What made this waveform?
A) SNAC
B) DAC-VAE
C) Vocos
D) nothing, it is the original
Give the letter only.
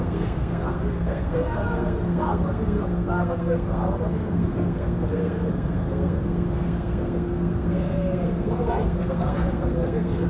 A